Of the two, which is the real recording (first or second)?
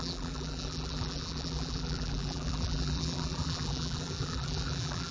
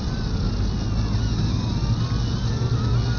second